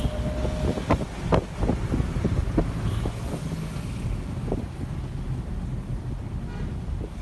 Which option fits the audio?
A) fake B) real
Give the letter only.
B